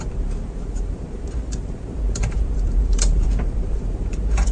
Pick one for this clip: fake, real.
fake